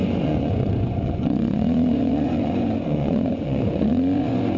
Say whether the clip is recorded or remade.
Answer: remade